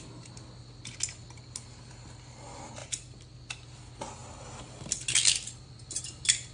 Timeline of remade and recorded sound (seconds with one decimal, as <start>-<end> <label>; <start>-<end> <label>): 0.0-2.8 recorded; 2.8-3.4 remade; 3.4-6.5 recorded